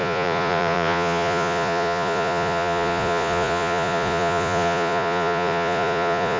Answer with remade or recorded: remade